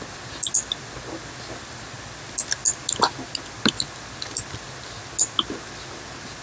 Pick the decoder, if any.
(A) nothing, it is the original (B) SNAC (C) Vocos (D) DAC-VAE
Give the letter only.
A